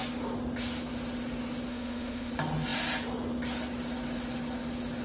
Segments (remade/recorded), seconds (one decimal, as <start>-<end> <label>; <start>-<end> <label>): 0.0-1.7 recorded; 1.7-2.3 remade; 2.3-5.0 recorded